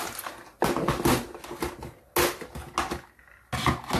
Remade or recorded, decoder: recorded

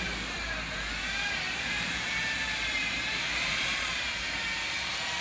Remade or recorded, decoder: remade, vocoder, BigVGAN v2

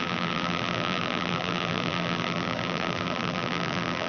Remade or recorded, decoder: remade, vocoder, BigVGAN v2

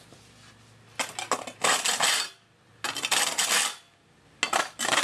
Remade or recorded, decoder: recorded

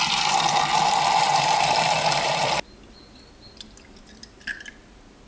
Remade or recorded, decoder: recorded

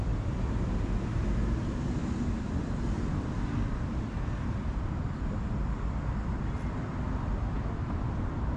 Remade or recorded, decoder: remade, vocoder, BigVGAN v2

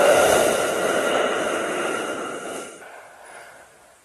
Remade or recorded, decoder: remade, vocoder, BigVGAN v2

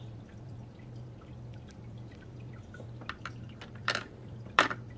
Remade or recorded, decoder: remade, vocoder, BigVGAN v2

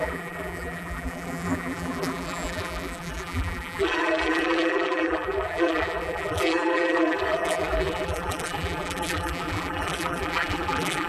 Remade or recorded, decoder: remade, vocoder, BigVGAN v2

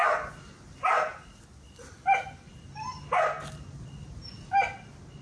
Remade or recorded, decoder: recorded